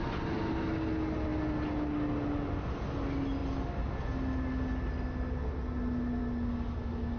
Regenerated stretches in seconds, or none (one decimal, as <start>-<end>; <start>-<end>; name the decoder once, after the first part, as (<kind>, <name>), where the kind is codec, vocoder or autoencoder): none